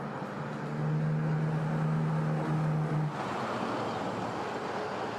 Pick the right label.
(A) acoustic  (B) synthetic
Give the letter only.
A